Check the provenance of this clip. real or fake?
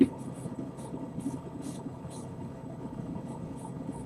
fake